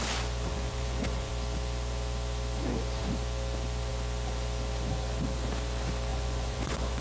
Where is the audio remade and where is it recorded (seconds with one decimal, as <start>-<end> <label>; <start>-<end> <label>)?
0.0-0.5 recorded; 0.5-1.3 remade; 1.3-6.1 recorded; 6.1-7.0 remade